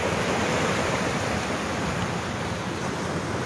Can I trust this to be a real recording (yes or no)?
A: no